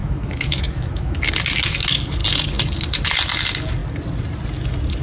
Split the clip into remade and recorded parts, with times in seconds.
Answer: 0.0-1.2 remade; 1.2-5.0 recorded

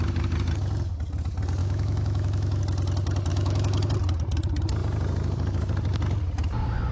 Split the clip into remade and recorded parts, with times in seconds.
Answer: 0.0-1.6 recorded; 1.6-2.6 remade; 2.6-3.3 recorded; 3.3-3.9 remade; 3.9-6.9 recorded

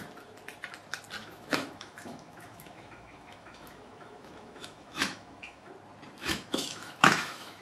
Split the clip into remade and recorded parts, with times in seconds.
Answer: 0.0-1.2 recorded; 1.2-5.7 remade; 5.7-6.2 recorded; 6.2-7.6 remade

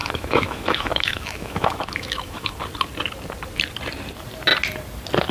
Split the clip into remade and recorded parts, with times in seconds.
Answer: 0.0-2.5 remade; 2.5-5.3 recorded

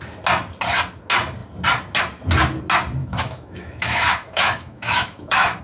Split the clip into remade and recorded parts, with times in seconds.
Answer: 0.0-3.0 recorded; 3.0-5.6 remade

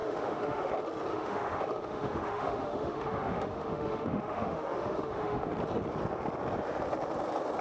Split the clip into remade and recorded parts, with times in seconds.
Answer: 0.0-0.7 remade; 0.7-1.1 recorded; 1.1-5.5 remade; 5.5-7.6 recorded

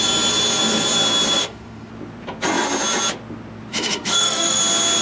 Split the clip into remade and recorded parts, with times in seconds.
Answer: 0.0-1.4 recorded; 1.4-1.9 remade; 1.9-3.7 recorded; 3.7-4.6 remade; 4.6-5.0 recorded